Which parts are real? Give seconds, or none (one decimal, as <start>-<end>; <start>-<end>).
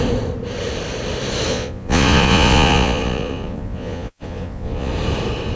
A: 0.0-1.5; 4.9-5.6